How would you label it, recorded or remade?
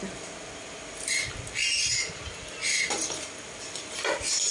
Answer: recorded